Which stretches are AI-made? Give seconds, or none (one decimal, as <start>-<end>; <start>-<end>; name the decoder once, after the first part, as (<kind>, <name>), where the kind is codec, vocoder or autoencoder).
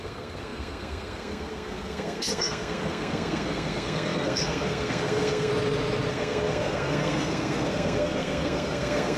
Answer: 0.0-5.5 (codec, SNAC); 6.1-9.2